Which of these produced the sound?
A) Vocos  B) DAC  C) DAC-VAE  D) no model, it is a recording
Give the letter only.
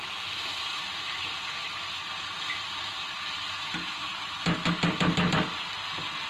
D